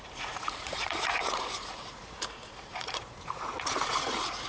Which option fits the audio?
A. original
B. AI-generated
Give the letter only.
B